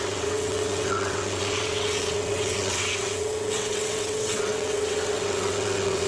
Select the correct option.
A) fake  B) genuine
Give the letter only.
A